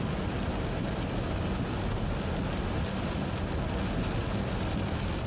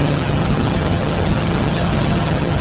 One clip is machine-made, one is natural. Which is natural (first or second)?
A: first